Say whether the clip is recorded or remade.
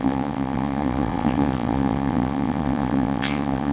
remade